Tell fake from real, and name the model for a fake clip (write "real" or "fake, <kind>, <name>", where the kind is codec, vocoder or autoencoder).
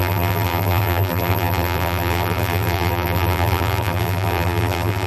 fake, vocoder, BigVGAN v2